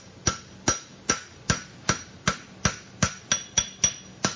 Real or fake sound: real